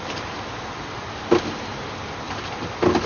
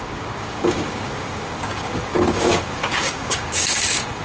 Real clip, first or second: first